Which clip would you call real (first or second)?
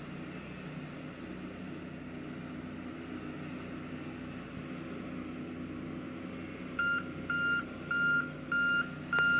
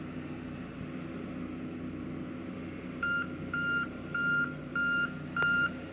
first